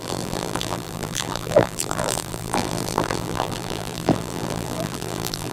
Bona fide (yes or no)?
no